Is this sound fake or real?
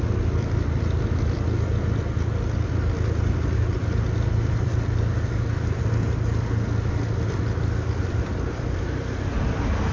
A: real